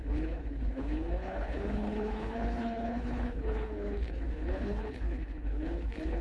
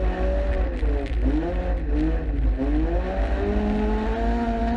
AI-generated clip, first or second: first